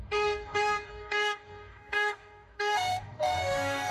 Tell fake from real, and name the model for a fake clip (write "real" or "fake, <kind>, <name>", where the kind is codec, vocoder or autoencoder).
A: fake, codec, DAC